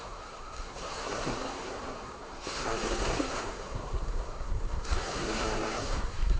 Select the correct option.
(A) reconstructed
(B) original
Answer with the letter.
A